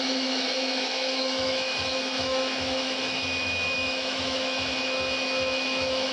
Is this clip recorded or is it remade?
remade